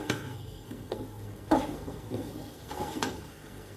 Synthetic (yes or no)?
yes